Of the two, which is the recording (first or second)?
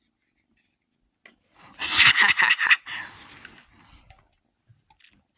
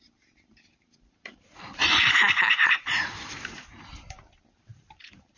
first